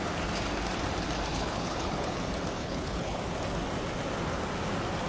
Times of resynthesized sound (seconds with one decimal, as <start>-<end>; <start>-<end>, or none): 1.3-2.2; 2.6-3.2